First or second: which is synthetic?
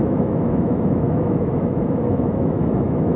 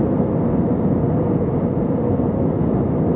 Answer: first